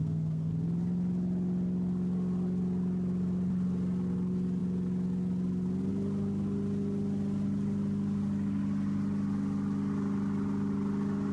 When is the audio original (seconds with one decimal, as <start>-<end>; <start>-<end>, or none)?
0.5-11.3